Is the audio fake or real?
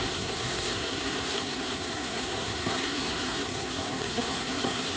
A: fake